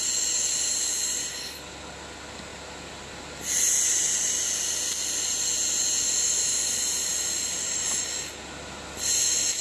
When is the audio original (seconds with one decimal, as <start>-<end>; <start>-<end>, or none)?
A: 0.0-9.6